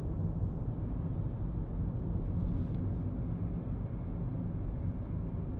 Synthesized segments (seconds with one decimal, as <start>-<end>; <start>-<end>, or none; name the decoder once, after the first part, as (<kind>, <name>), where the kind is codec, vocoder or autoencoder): none